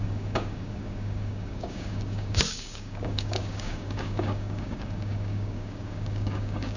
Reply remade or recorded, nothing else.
remade